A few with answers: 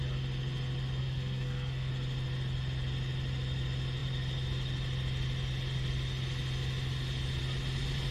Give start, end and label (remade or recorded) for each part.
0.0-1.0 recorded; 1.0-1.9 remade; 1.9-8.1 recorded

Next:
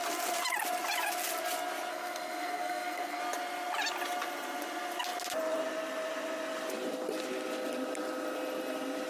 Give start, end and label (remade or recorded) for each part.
0.0-1.9 recorded; 1.9-3.2 remade; 3.2-9.1 recorded

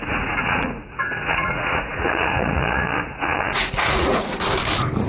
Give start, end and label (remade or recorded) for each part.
0.0-4.2 remade; 4.2-5.1 recorded

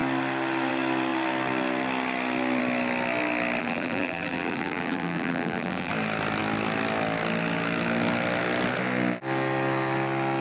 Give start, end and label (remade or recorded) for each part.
0.0-3.6 recorded; 3.6-5.9 remade; 5.9-10.4 recorded

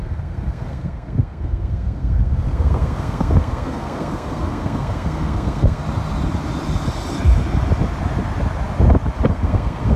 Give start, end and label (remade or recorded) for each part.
0.0-5.8 remade; 5.8-9.3 recorded; 9.3-10.0 remade

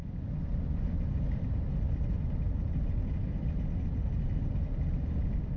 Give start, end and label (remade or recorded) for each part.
0.0-5.6 recorded

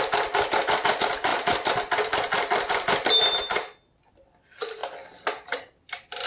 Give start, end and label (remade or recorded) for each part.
0.0-6.3 recorded